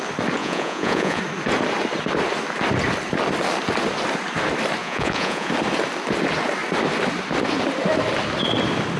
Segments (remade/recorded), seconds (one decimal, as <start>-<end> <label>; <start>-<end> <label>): 0.0-0.4 recorded; 0.4-1.2 remade; 1.2-4.8 recorded; 4.8-5.5 remade; 5.5-9.0 recorded